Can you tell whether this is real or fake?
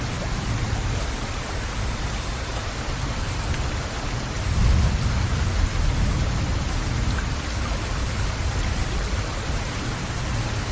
real